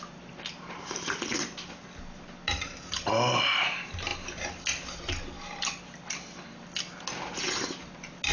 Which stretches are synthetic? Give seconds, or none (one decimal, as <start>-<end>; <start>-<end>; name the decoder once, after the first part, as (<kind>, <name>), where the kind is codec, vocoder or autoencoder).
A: none